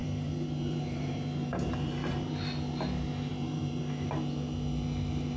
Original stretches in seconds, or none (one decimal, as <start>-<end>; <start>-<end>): 2.4-3.3; 3.8-5.4